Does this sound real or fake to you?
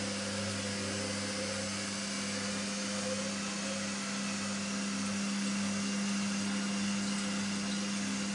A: real